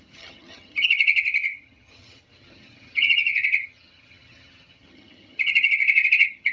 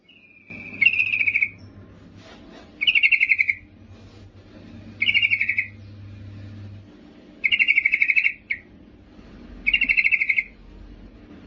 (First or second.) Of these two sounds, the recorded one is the second